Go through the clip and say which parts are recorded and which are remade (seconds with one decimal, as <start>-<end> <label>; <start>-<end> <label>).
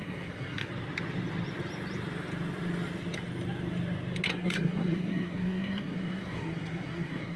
0.0-0.7 remade; 0.7-4.3 recorded; 4.3-7.4 remade